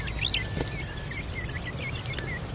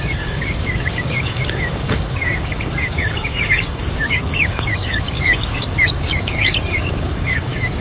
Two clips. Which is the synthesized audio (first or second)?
second